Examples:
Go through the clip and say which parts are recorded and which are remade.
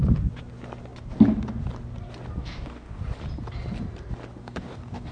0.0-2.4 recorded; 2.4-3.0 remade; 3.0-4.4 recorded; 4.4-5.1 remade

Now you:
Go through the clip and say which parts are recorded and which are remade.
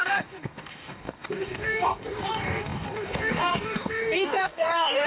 0.0-5.1 remade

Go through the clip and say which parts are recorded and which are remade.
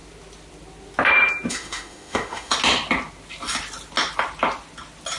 0.0-1.5 recorded; 1.5-2.5 remade; 2.5-5.2 recorded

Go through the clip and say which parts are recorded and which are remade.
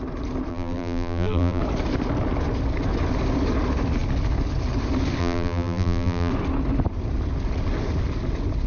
0.0-0.5 recorded; 0.5-1.6 remade; 1.6-5.2 recorded; 5.2-6.3 remade; 6.3-8.7 recorded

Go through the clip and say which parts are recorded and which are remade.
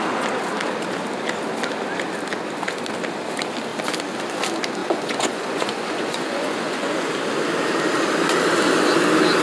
0.0-4.8 recorded; 4.8-7.1 remade; 7.1-9.4 recorded